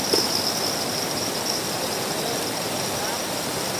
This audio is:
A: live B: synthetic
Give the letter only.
A